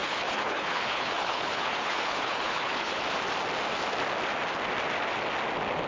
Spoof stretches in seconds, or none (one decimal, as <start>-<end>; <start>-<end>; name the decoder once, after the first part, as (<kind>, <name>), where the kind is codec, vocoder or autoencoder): 0.0-3.0 (codec, HILCodec)